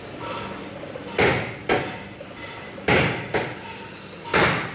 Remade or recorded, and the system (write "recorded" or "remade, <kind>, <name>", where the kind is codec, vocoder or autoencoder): recorded